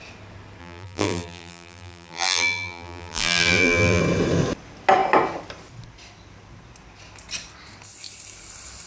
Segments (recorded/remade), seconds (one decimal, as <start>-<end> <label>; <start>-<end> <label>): 0.0-0.6 recorded; 0.6-4.0 remade; 4.0-8.9 recorded